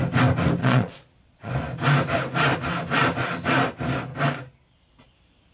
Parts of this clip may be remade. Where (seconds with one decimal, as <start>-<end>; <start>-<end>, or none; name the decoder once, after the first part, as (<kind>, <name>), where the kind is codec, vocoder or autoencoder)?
0.6-1.5 (vocoder, Vocos)